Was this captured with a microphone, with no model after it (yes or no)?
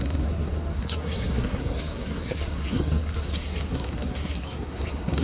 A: no